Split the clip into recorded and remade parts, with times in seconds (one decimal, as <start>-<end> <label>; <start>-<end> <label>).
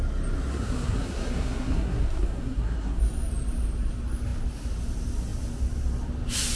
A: 0.0-0.5 recorded; 0.5-3.0 remade; 3.0-6.6 recorded